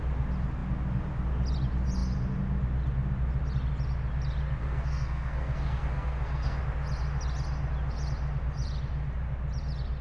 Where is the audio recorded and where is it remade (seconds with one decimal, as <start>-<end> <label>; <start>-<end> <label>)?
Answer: 0.0-4.6 recorded; 4.6-6.6 remade; 6.6-10.0 recorded